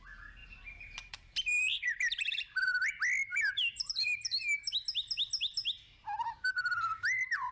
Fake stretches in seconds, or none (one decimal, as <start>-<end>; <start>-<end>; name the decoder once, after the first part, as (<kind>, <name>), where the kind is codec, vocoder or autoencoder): 0.4-2.7 (vocoder, BigVGAN v2); 3.3-4.7